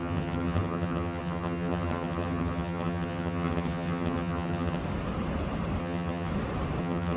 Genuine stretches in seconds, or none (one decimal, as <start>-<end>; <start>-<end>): 4.8-5.8; 6.3-6.8